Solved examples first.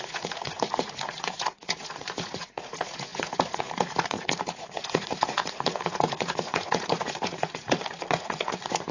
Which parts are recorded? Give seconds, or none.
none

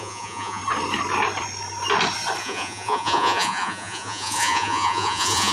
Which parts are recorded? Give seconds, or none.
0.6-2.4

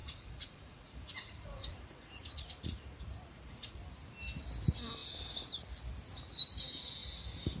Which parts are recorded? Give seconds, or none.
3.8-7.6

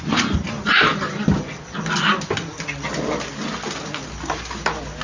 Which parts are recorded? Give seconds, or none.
0.0-5.0

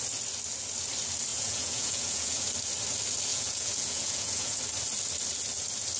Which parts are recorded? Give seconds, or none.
0.0-1.3; 2.5-3.3; 4.6-6.0

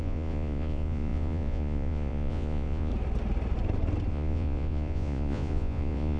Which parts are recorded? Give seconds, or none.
2.9-4.1

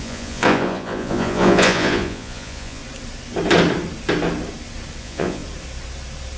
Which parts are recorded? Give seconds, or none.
2.8-5.0; 5.4-6.4

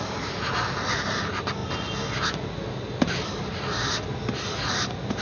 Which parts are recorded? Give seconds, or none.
0.0-5.2